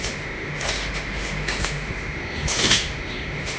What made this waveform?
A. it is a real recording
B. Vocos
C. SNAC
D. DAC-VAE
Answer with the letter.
D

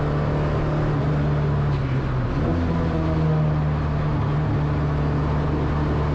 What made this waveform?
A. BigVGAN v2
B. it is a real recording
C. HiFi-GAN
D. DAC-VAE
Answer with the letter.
B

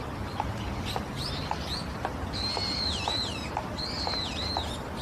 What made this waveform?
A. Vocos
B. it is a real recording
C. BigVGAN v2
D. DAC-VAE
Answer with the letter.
B